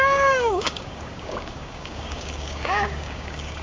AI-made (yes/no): yes